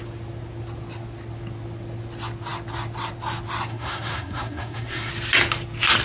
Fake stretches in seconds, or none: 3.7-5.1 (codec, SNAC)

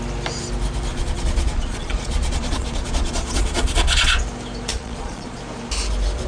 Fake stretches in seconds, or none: 0.9-4.2 (vocoder, Vocos); 4.7-5.4

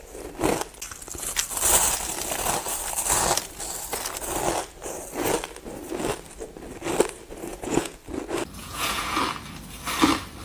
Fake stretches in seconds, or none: 7.5-8.0 (vocoder, Vocos); 8.6-9.2

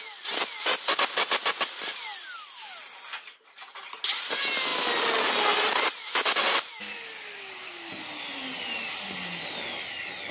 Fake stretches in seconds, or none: none